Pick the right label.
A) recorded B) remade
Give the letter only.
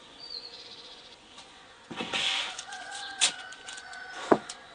B